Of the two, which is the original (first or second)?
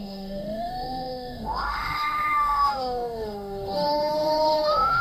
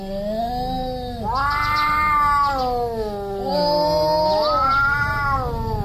second